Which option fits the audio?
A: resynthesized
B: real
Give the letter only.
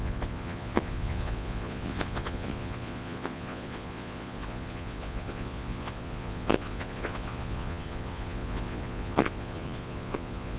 A